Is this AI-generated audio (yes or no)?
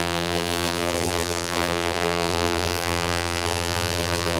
yes